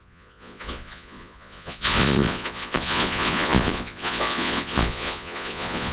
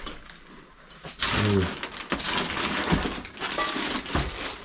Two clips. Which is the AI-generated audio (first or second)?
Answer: first